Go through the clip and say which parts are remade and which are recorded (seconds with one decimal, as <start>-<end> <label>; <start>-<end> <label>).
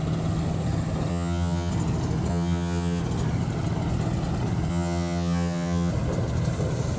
0.0-1.1 recorded; 1.1-1.7 remade; 1.7-2.3 recorded; 2.3-3.0 remade; 3.0-4.7 recorded; 4.7-5.9 remade; 5.9-7.0 recorded